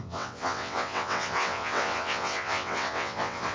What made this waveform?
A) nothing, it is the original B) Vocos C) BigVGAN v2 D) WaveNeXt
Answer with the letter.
D